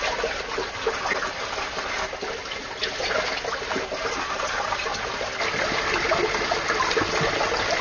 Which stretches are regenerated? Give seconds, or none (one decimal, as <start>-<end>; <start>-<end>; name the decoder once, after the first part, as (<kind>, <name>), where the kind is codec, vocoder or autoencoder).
none